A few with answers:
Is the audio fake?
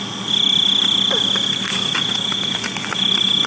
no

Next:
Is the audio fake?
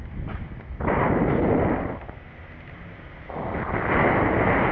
no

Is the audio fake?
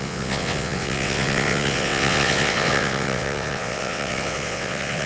yes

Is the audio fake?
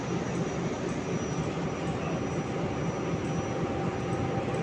no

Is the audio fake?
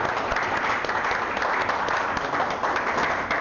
no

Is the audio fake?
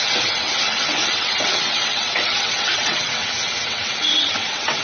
yes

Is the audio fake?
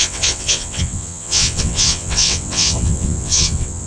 yes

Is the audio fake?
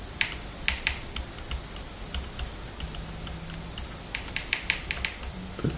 no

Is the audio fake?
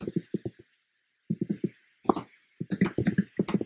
no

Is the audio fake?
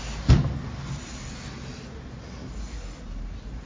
no